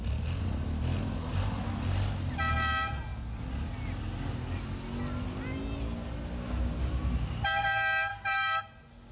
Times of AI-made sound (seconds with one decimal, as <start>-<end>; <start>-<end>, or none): 8.1-8.6